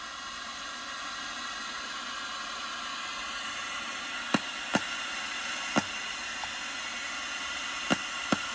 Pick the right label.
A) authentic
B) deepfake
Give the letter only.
A